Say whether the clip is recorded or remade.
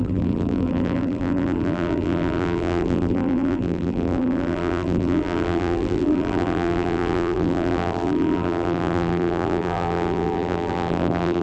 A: remade